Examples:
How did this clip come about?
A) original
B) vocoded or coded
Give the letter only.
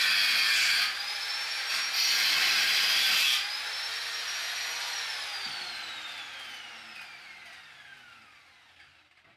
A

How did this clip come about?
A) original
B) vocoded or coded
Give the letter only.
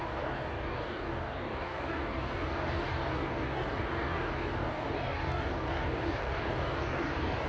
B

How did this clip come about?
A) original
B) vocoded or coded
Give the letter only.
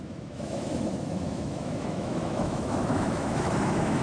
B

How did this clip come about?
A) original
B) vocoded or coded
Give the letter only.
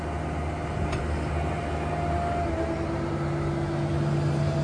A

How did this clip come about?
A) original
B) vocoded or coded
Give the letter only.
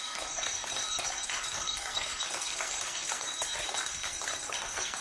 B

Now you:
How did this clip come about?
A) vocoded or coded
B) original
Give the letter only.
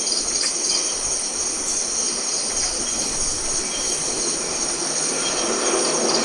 B